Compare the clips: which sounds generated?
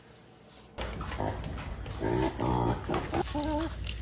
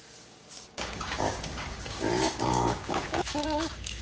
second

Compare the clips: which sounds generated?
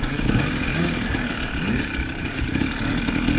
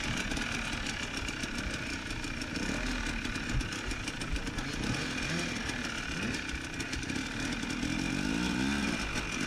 first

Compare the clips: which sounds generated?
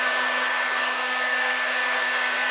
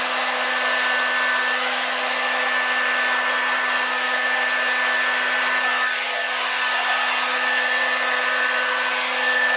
first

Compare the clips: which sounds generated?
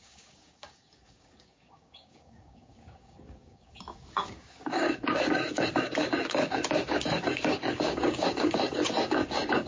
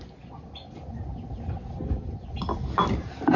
first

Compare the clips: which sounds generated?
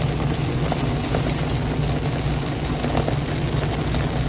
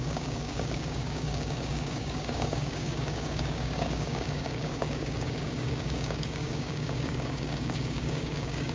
second